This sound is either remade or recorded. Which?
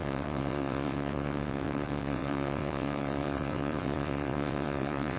remade